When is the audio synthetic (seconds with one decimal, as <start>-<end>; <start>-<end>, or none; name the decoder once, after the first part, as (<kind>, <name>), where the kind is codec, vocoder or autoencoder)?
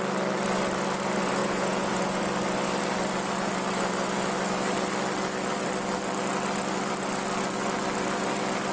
1.4-2.2 (vocoder, Vocos)